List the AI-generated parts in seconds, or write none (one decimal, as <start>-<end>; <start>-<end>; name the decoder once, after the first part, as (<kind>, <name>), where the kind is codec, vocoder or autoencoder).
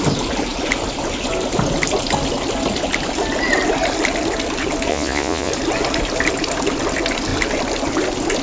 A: 4.9-5.5 (vocoder, Vocos)